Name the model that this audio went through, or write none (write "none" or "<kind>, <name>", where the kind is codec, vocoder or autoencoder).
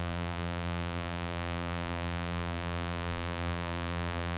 vocoder, BigVGAN v2